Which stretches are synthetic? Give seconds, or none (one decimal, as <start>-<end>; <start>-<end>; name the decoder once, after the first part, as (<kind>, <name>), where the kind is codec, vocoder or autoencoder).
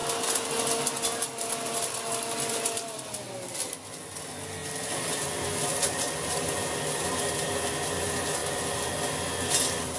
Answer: none